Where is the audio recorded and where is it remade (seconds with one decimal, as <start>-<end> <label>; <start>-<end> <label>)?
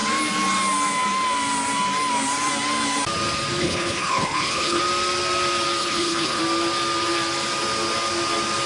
0.0-3.6 recorded; 3.6-4.8 remade; 4.8-5.8 recorded; 5.8-6.4 remade; 6.4-8.7 recorded